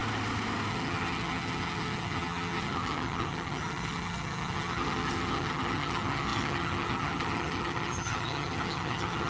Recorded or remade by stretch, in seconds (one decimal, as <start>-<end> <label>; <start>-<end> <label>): 0.0-0.7 recorded; 0.7-9.3 remade